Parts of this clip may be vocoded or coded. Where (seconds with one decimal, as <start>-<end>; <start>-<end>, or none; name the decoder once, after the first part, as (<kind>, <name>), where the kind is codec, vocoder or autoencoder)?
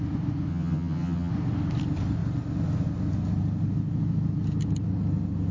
0.5-1.3 (vocoder, HiFi-GAN)